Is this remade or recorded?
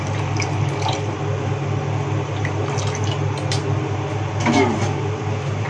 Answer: recorded